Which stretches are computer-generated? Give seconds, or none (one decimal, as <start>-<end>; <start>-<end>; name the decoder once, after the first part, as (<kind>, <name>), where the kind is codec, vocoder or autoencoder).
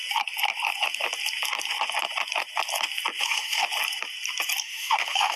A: 3.2-3.6 (autoencoder, DAC-VAE); 4.6-5.4